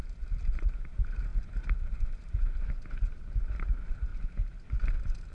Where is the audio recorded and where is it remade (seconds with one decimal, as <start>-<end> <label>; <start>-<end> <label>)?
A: 0.0-2.6 remade; 2.6-3.4 recorded; 3.4-4.1 remade; 4.1-5.3 recorded